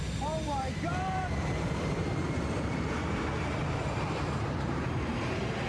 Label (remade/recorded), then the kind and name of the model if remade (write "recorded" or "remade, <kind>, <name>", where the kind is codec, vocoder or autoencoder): remade, vocoder, BigVGAN v2